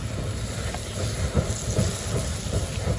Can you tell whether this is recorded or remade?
recorded